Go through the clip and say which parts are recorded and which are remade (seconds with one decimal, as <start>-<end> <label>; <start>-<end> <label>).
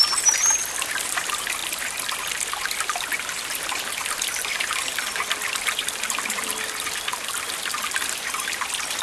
0.0-9.0 recorded